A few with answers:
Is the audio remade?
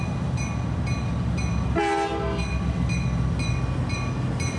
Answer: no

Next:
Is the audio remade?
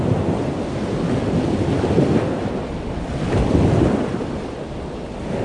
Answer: no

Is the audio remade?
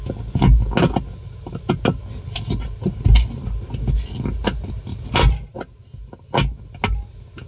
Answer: no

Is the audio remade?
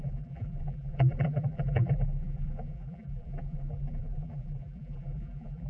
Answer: yes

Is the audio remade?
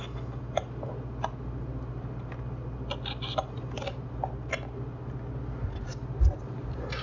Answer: no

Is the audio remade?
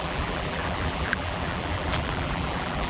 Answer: yes